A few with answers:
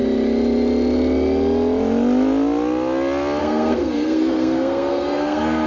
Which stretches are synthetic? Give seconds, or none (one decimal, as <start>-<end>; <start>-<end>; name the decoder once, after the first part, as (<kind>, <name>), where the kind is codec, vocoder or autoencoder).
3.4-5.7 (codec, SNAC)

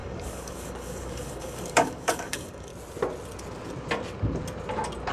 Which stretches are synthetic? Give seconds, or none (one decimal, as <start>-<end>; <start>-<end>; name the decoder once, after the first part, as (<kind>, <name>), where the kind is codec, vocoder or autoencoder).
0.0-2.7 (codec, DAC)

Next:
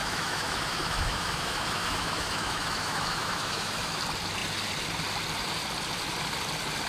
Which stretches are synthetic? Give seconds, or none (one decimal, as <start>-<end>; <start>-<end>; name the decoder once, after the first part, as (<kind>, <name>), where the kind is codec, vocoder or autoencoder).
0.0-4.0 (autoencoder, DAC-VAE)

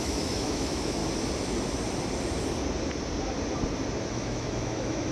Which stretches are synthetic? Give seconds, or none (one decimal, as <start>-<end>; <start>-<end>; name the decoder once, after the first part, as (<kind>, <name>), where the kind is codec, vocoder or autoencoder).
0.0-1.0 (autoencoder, DAC-VAE); 4.1-5.1

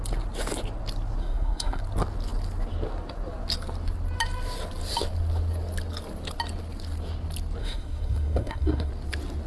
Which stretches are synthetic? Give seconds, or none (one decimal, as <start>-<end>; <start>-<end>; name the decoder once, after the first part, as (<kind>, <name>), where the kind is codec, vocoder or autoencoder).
1.2-1.8 (codec, SNAC); 7.6-8.9